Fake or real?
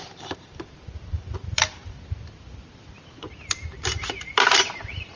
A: fake